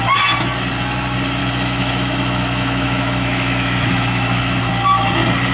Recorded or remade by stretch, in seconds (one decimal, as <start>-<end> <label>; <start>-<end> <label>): 0.0-1.4 recorded; 1.4-4.7 remade; 4.7-5.5 recorded